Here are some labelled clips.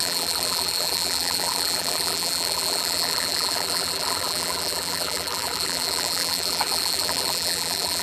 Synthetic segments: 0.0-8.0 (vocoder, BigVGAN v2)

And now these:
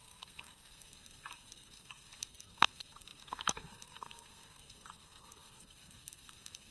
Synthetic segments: 0.0-6.7 (codec, SNAC)